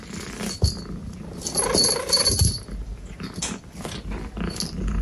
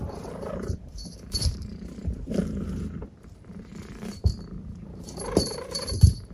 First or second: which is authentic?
first